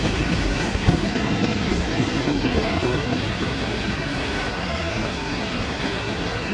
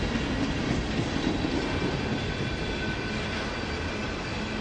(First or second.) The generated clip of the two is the first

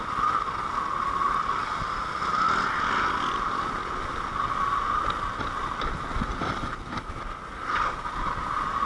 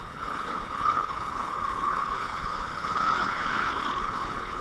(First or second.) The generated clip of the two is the second